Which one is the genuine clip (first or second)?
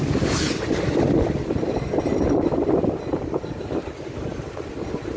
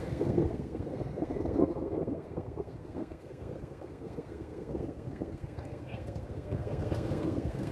first